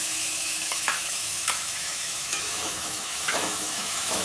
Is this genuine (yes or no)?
no